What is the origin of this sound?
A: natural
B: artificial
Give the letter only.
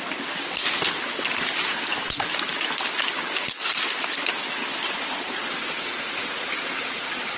A